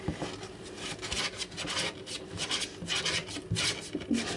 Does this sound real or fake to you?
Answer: real